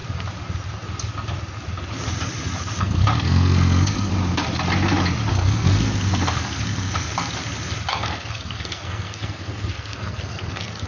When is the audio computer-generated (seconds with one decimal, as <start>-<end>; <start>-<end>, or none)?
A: 2.8-4.1; 5.3-7.1; 7.9-10.9

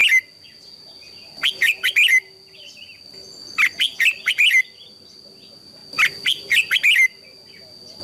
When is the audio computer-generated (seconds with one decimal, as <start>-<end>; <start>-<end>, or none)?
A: none

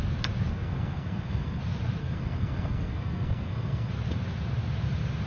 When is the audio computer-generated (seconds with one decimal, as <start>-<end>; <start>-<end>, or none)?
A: 0.5-1.6; 2.0-3.9

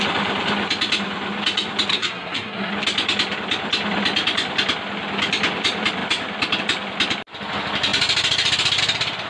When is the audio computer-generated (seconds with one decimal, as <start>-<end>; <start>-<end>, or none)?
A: 1.9-2.7